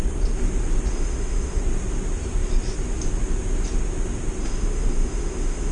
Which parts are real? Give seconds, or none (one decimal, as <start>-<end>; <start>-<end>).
0.0-0.9; 1.6-4.4